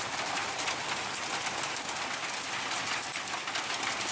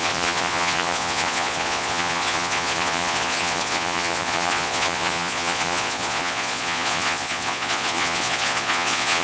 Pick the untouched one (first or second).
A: first